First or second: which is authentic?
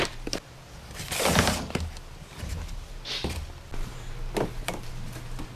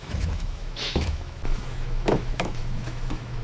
first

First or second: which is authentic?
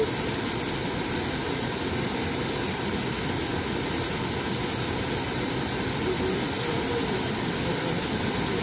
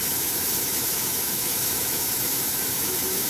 first